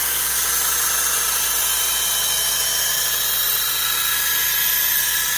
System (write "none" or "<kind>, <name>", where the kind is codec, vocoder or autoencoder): none